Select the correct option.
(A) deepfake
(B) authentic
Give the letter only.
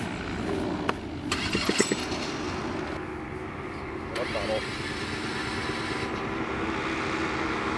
B